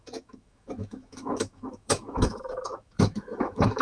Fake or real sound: fake